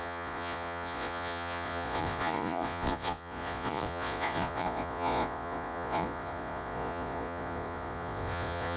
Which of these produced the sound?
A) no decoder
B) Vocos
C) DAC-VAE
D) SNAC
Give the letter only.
B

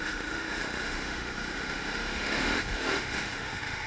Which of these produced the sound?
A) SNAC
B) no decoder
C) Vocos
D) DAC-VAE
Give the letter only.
D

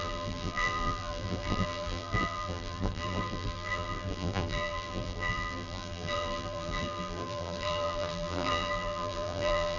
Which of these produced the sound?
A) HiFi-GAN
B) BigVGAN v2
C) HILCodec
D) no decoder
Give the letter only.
B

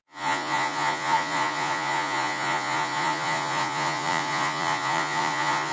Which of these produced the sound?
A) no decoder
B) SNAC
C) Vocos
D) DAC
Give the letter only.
C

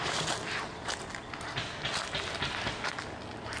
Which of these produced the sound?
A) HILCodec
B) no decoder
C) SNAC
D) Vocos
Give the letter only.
B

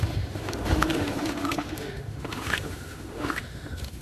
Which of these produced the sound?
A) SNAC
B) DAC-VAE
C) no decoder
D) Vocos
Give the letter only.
B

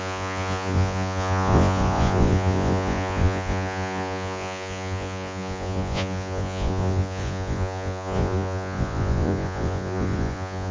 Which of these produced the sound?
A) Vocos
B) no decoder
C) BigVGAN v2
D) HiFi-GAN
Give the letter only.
A